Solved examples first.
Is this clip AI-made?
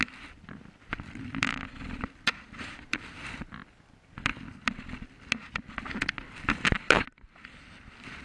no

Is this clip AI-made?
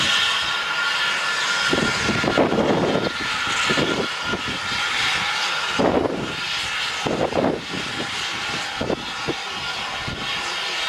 no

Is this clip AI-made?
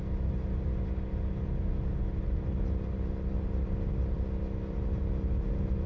no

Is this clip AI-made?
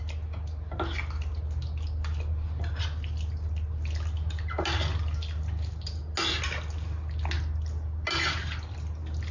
no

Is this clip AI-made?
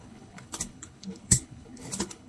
yes